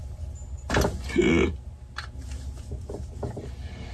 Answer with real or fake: real